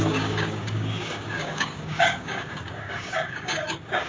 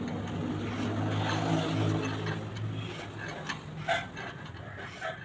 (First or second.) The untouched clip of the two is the second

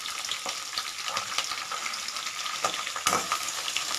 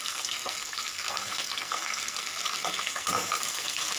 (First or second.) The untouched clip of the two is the first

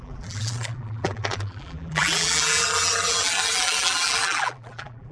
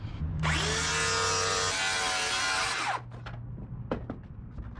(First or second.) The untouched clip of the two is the second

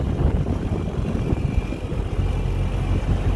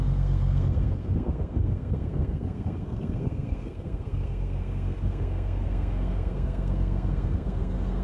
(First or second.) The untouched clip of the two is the first